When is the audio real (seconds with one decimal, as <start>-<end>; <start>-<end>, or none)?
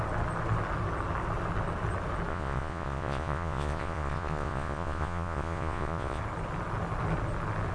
0.0-2.3; 6.2-7.7